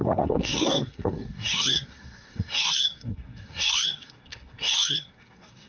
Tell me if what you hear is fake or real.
fake